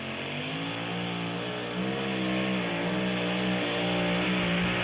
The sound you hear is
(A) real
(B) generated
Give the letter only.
A